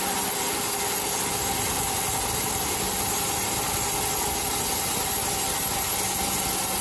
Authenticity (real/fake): real